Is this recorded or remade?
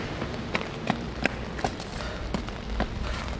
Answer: recorded